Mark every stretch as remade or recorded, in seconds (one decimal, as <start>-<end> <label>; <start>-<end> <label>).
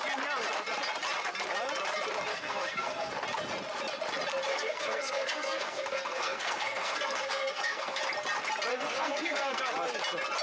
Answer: 0.0-2.3 recorded; 2.3-3.1 remade; 3.1-4.5 recorded; 4.5-8.0 remade; 8.0-8.7 recorded; 8.7-9.6 remade; 9.6-10.4 recorded